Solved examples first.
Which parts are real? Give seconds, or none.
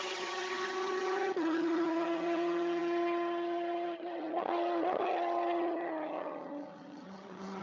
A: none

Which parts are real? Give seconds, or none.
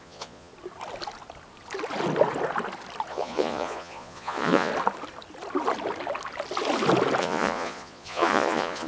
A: 0.5-3.1; 4.7-7.2